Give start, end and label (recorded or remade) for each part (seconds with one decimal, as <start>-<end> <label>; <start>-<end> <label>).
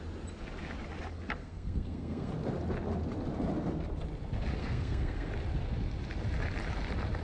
0.0-1.4 recorded; 1.4-2.3 remade; 2.3-4.6 recorded; 4.6-5.3 remade; 5.3-7.2 recorded